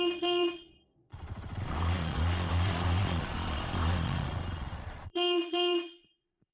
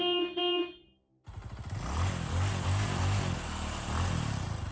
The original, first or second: second